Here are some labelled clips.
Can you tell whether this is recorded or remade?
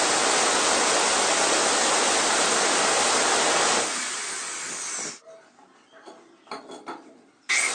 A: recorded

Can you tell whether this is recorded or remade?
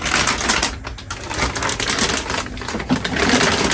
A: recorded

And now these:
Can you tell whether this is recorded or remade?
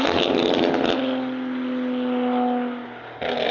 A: recorded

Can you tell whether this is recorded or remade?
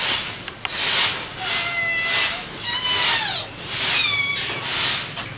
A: recorded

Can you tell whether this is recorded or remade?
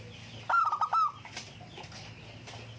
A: recorded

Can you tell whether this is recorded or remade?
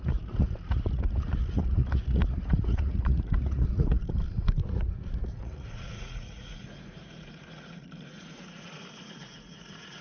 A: remade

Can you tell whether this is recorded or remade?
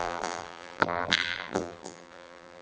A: remade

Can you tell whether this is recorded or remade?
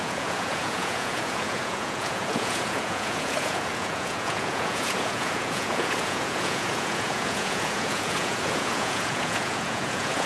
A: remade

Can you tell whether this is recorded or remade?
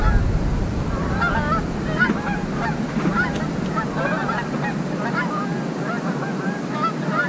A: recorded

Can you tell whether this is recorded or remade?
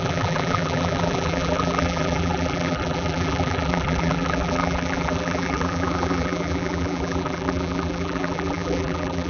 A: remade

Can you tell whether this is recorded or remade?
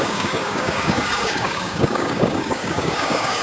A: remade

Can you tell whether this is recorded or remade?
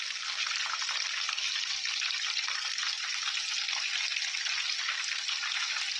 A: recorded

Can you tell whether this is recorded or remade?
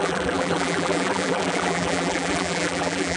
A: remade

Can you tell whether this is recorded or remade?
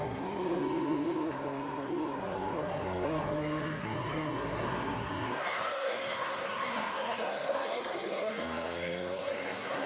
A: remade